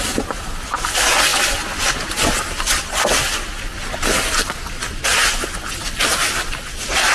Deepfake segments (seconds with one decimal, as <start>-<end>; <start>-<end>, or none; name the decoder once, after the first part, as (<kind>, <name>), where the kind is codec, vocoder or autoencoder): none

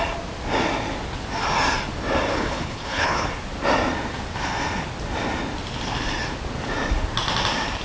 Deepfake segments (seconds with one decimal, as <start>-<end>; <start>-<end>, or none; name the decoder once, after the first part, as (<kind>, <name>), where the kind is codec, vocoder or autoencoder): 2.3-3.3 (codec, HILCodec)

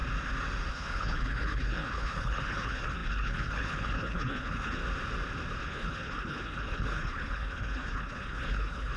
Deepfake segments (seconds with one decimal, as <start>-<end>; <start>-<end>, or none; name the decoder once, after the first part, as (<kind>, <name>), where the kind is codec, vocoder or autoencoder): 0.7-4.8 (codec, HILCodec); 5.6-9.0

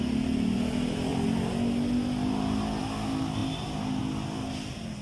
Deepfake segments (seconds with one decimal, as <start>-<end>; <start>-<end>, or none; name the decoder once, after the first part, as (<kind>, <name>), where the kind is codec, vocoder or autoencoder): none

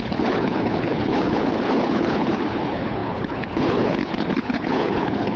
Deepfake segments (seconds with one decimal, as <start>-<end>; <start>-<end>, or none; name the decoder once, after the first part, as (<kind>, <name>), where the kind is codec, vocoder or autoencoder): 0.0-5.4 (codec, HILCodec)

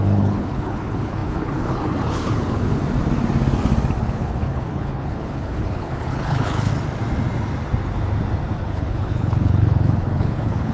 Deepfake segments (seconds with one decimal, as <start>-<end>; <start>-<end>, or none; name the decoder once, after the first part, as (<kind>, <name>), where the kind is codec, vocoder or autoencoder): 0.0-2.8 (codec, HILCodec); 4.0-6.7; 8.6-10.7

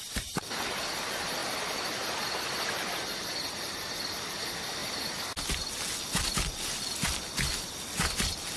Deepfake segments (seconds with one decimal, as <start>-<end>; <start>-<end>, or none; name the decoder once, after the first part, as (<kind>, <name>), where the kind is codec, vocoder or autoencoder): none

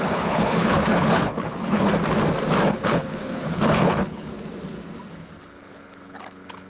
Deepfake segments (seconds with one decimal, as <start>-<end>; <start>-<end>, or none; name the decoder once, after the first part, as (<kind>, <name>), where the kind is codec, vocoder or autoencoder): 0.0-1.9 (codec, HILCodec); 2.7-4.3; 5.1-6.7